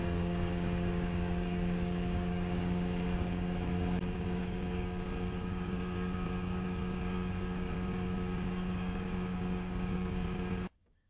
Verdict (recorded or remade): remade